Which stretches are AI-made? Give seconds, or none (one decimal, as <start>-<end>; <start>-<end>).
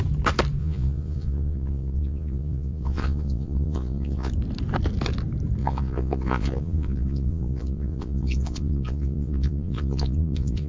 0.6-4.3; 5.6-10.7